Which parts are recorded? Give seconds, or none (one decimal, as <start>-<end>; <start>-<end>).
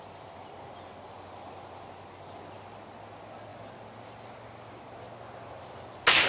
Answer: 0.0-6.3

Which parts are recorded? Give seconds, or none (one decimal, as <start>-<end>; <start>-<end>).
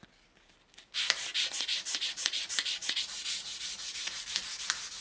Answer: 0.0-1.3; 4.1-5.0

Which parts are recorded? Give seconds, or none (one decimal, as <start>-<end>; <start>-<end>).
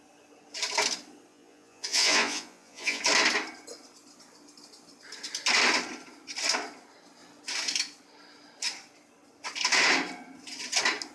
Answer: 0.0-1.3; 3.0-11.1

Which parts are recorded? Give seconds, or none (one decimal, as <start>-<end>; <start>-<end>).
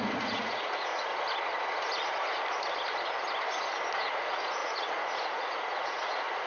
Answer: 1.1-4.0